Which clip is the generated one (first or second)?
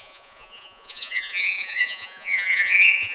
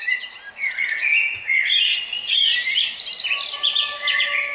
first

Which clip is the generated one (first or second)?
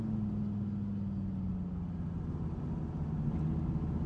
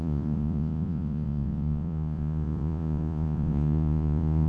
second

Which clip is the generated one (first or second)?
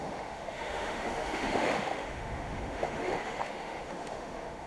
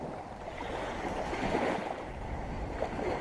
first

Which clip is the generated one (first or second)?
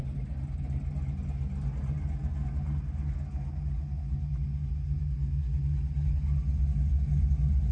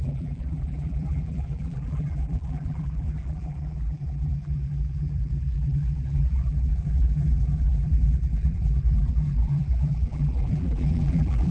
second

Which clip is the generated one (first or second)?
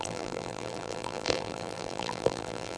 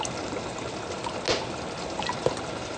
first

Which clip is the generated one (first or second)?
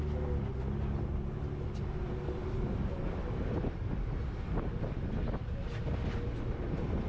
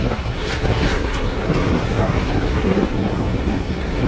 second